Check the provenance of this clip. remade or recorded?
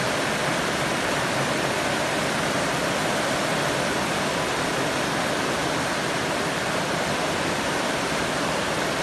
recorded